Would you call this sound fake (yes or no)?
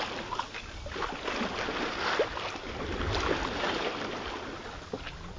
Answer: no